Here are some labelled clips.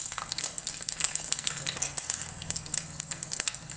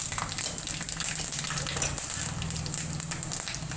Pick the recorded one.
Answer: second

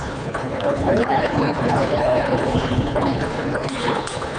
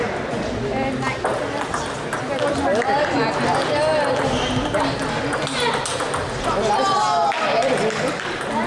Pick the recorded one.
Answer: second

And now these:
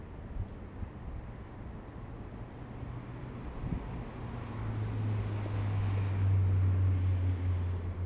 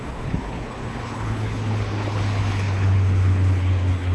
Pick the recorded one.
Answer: first